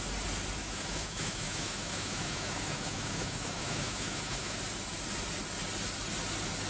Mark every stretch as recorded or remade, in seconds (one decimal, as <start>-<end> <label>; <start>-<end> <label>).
0.0-0.6 recorded; 0.6-4.6 remade; 4.6-6.7 recorded